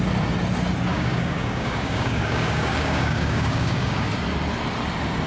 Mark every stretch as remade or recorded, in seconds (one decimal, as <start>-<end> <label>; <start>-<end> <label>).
0.0-0.9 recorded; 0.9-4.1 remade; 4.1-5.3 recorded